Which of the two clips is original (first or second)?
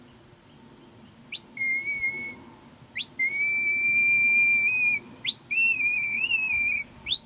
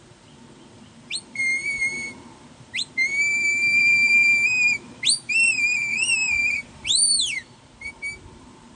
first